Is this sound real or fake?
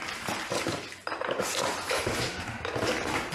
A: real